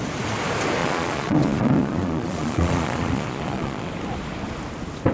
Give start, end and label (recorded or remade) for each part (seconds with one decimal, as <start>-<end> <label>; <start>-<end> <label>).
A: 0.0-0.8 recorded; 0.8-3.9 remade; 3.9-5.1 recorded